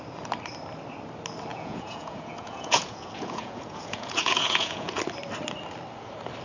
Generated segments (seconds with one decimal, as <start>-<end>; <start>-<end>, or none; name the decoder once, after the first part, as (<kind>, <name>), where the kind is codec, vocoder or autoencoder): 1.5-5.0 (vocoder, Vocos)

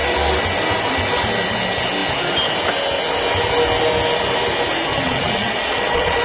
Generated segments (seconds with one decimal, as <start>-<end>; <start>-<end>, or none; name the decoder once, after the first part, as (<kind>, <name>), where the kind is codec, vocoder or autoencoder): 4.9-6.2 (vocoder, Vocos)